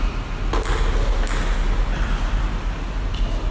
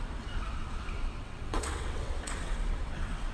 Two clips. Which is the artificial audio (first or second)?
second